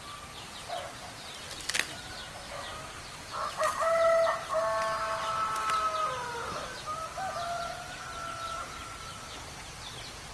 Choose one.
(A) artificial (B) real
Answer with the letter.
B